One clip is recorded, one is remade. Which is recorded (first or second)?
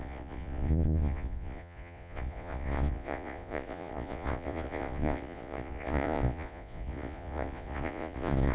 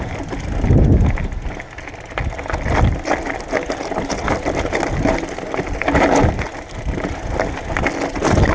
second